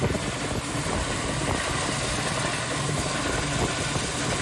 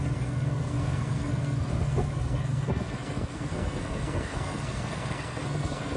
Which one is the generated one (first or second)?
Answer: second